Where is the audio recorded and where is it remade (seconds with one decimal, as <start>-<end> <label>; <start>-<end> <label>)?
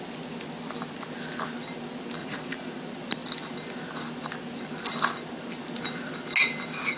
0.0-2.2 recorded; 2.2-2.8 remade; 2.8-7.0 recorded